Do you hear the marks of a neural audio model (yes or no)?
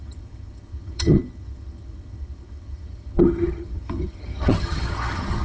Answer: yes